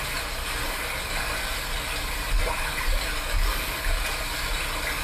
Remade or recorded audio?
recorded